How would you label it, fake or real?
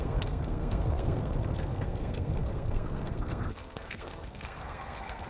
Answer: fake